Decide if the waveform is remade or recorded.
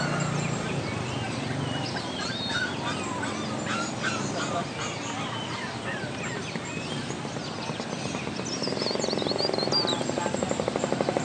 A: recorded